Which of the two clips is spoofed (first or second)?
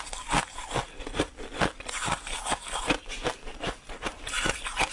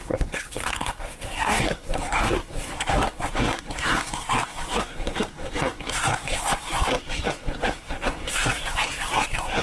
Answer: second